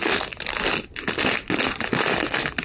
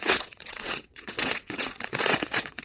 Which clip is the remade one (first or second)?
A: second